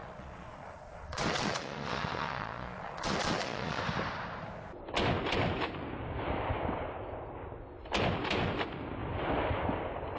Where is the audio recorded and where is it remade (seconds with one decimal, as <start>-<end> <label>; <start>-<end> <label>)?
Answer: 0.0-3.8 remade; 3.8-10.2 recorded